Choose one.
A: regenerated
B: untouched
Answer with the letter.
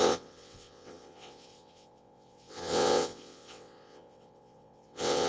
A